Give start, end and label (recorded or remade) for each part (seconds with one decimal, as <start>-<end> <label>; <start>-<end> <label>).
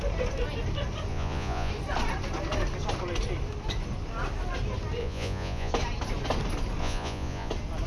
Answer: 0.0-1.1 recorded; 1.1-1.7 remade; 1.7-5.0 recorded; 5.0-5.7 remade; 5.7-6.8 recorded; 6.8-7.5 remade; 7.5-7.9 recorded